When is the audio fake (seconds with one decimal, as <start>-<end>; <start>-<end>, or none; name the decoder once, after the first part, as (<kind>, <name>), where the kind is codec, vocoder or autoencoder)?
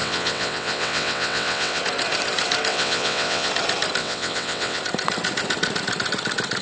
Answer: 0.0-1.8 (vocoder, WaveNeXt); 2.7-3.5; 4.0-4.8